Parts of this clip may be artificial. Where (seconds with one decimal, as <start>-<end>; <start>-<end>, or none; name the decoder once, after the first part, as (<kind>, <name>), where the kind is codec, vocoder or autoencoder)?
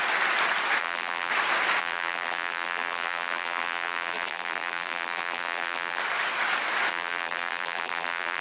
0.8-1.3 (vocoder, BigVGAN v2); 1.8-6.0; 6.9-8.4